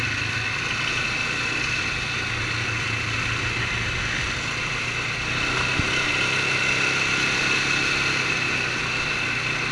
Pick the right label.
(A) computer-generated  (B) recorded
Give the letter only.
B